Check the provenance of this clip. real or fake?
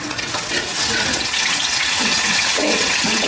fake